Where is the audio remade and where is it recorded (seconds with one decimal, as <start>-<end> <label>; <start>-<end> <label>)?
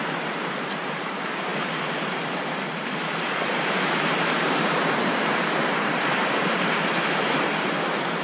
0.0-8.2 remade